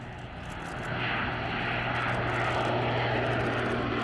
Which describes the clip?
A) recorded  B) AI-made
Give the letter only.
A